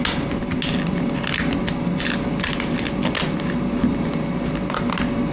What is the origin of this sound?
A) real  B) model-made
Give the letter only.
A